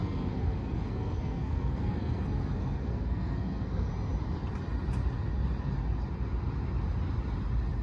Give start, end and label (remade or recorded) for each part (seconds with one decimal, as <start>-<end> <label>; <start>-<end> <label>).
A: 0.0-3.9 remade; 3.9-7.8 recorded